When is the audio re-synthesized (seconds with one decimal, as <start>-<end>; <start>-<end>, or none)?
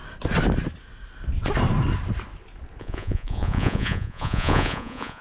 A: 2.8-5.2